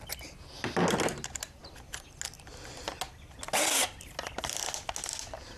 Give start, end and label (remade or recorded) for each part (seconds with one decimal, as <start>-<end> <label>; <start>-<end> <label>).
0.0-5.6 recorded